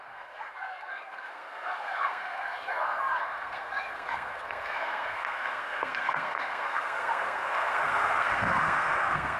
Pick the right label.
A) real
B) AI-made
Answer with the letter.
B